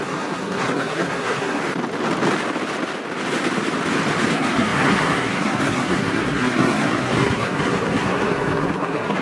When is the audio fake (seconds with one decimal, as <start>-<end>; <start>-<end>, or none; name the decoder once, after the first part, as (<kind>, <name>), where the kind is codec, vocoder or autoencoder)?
0.0-1.6 (codec, SNAC); 4.3-9.2